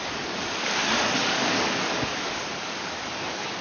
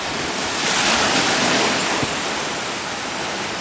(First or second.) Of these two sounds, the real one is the second